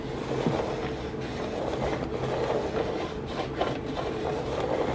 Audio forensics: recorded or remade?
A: recorded